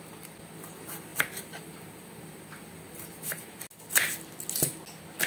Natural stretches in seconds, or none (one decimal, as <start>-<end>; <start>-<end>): 0.0-1.1; 3.6-5.3

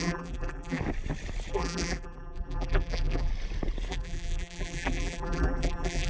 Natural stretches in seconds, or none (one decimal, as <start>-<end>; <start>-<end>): 0.8-1.5; 3.3-3.9